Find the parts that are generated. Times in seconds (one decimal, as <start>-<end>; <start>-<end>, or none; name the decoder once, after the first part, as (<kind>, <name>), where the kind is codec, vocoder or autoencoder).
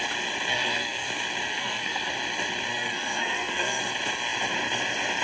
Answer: 0.5-1.1 (codec, SNAC); 1.5-2.1; 2.7-3.8